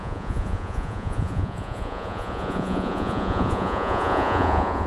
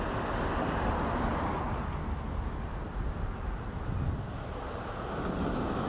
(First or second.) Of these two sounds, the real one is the second